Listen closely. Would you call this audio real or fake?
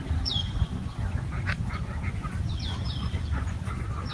fake